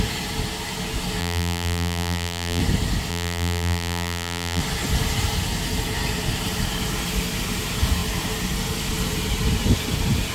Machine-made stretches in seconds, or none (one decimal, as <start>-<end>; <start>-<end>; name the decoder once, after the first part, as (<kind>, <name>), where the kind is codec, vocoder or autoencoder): 1.2-2.6 (vocoder, BigVGAN v2); 3.1-4.6